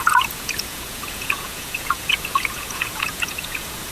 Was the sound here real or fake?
fake